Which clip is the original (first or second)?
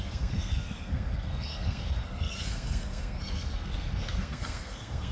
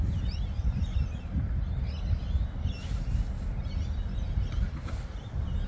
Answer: second